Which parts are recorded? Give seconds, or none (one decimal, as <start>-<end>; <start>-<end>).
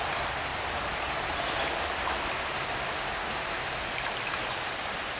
0.0-5.2